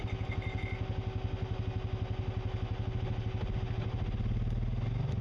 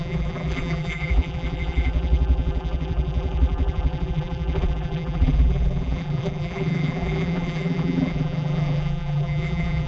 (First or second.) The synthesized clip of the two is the second